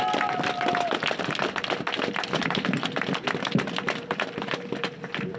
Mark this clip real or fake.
real